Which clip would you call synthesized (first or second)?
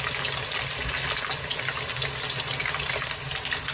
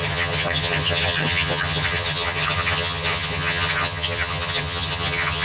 second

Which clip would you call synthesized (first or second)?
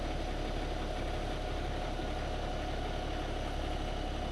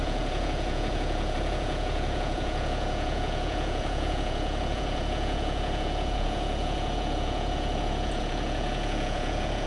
second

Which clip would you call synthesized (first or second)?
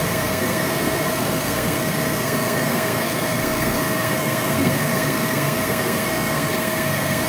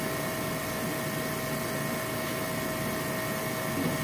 first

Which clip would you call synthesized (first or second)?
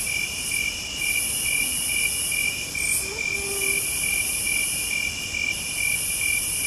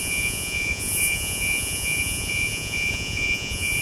second